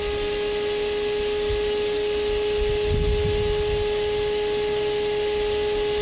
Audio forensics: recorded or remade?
recorded